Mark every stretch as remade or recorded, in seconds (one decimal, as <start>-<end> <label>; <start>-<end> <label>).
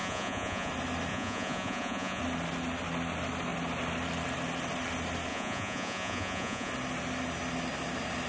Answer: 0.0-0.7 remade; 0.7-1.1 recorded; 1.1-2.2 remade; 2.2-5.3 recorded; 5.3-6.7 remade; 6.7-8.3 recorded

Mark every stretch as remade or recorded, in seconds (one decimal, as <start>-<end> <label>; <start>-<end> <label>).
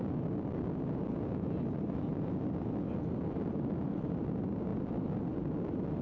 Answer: 0.0-6.0 recorded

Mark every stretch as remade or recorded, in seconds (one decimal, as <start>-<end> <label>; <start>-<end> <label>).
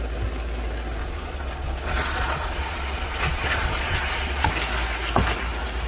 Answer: 0.0-1.0 recorded; 1.0-4.5 remade; 4.5-5.9 recorded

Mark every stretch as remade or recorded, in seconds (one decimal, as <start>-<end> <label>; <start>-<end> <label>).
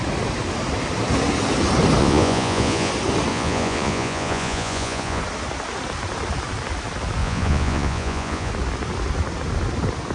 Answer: 0.0-2.0 recorded; 2.0-2.9 remade; 2.9-3.3 recorded; 3.3-5.2 remade; 5.2-7.2 recorded; 7.2-8.5 remade; 8.5-10.1 recorded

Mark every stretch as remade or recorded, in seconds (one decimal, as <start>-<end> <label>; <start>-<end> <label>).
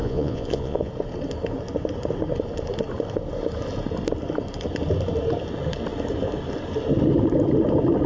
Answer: 0.0-0.9 remade; 0.9-8.1 recorded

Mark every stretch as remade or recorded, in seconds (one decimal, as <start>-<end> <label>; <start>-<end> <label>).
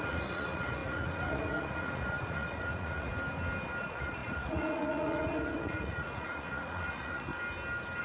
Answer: 0.0-3.1 remade; 3.1-3.8 recorded; 3.8-7.3 remade; 7.3-8.0 recorded